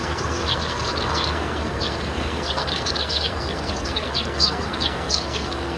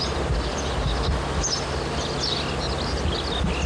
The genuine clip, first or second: second